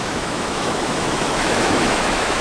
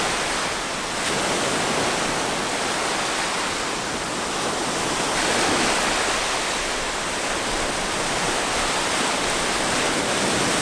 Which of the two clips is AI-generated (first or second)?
first